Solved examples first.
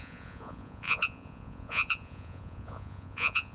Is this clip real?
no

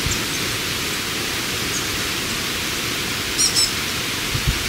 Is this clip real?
yes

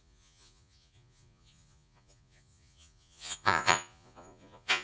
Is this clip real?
no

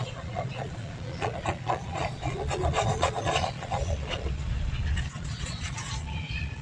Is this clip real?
no